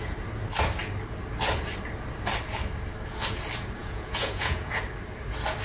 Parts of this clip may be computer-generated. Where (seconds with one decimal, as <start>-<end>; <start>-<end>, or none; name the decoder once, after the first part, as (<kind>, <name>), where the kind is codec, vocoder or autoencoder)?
3.8-4.8 (vocoder, Vocos)